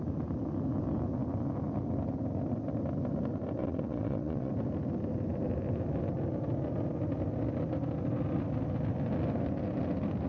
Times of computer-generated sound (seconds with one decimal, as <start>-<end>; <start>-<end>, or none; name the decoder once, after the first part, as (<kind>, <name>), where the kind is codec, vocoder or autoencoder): 3.6-4.5 (vocoder, WaveNeXt)